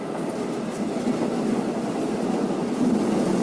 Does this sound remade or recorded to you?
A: recorded